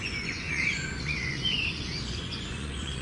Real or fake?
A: fake